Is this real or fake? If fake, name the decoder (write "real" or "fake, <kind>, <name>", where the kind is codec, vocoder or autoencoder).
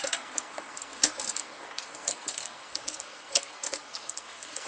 fake, codec, SNAC